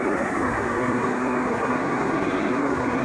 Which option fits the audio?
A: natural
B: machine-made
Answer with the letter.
B